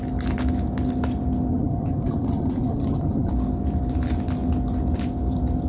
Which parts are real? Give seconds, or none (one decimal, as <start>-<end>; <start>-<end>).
0.0-1.5; 3.3-5.7